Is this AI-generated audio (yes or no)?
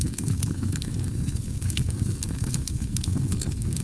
yes